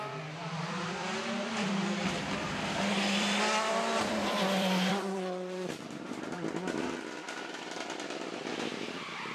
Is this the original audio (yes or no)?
no